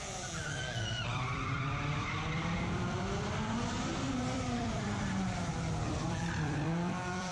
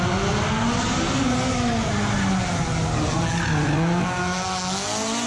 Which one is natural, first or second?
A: second